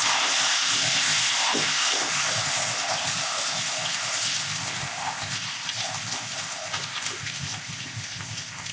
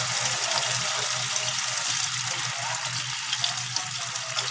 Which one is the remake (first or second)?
first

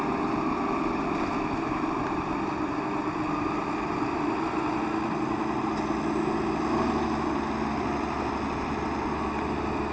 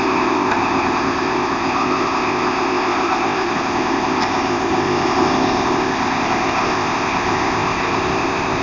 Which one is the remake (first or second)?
second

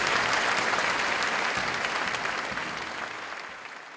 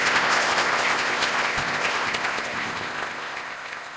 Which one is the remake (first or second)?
second